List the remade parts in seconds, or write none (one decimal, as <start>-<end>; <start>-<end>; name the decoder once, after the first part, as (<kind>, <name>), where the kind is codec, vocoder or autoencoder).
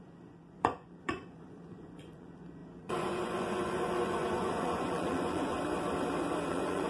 0.0-5.5 (vocoder, Vocos); 6.5-6.9